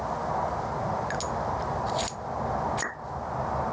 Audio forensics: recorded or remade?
recorded